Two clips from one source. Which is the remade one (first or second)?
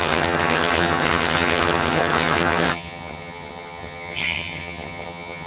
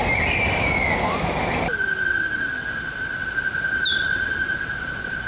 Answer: first